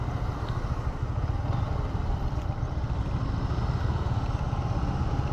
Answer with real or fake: real